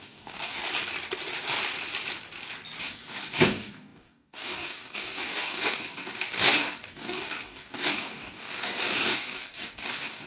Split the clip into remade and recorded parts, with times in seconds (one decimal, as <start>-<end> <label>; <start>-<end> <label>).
0.0-0.6 remade; 0.6-2.8 recorded; 2.8-10.3 remade